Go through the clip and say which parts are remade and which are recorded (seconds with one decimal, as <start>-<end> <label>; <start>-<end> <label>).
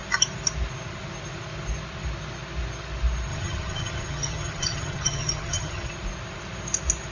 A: 0.0-3.3 recorded; 3.3-5.9 remade; 5.9-7.1 recorded